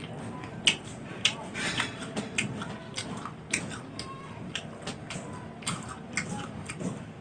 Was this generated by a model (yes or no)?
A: no